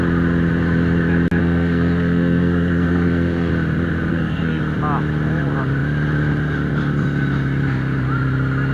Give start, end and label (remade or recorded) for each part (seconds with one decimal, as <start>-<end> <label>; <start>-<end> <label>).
0.0-1.4 recorded; 1.4-3.5 remade; 3.5-4.1 recorded; 4.1-4.6 remade; 4.6-8.7 recorded